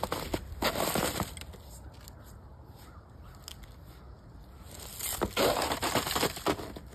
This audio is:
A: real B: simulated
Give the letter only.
A